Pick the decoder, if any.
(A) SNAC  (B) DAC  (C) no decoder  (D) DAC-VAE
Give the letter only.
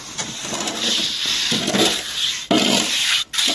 C